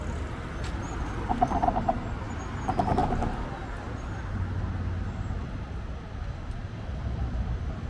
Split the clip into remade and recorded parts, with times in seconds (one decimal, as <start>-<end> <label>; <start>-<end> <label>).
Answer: 0.0-7.9 recorded